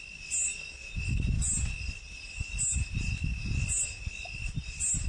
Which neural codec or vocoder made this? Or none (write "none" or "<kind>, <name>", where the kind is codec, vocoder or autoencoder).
none